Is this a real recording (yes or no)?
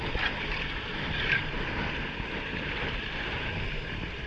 yes